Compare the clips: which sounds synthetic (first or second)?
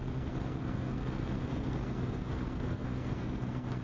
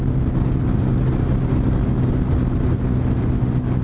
first